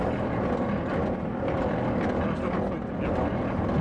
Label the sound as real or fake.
real